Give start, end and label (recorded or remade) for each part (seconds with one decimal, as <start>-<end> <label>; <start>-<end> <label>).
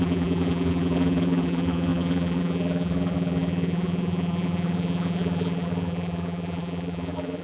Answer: 0.0-7.4 remade